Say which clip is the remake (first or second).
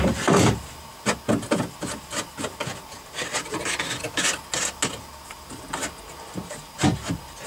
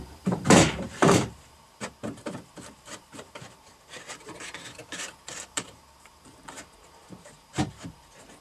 second